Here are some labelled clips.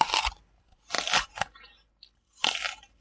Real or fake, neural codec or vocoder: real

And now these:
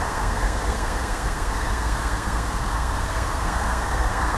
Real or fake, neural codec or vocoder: fake, codec, SNAC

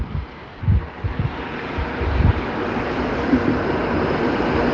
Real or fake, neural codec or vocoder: real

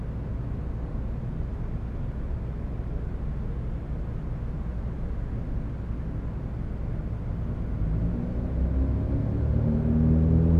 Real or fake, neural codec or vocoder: real